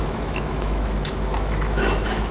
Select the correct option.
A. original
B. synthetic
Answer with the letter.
B